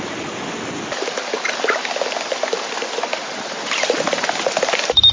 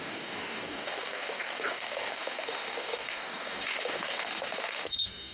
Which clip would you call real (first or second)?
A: first